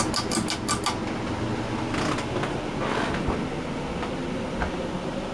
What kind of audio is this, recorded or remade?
recorded